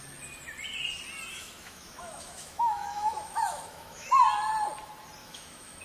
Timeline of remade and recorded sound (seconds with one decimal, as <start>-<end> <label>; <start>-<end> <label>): 0.0-1.3 recorded; 1.3-4.1 remade; 4.1-5.2 recorded; 5.2-5.8 remade